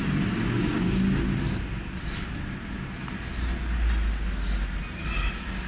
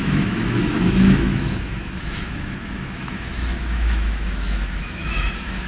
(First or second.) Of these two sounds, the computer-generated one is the second